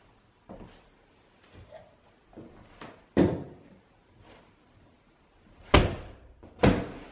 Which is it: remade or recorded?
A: recorded